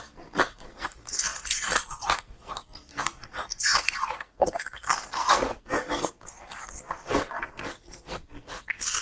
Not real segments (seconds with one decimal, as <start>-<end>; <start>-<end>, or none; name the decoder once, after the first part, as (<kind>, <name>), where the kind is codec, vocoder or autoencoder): 0.0-9.0 (codec, SNAC)